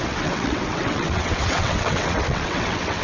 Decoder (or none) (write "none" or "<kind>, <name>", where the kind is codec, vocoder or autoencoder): vocoder, WaveNeXt